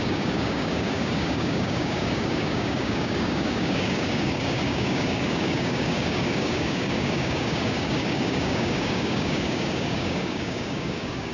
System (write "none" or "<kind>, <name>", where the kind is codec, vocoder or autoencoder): codec, DAC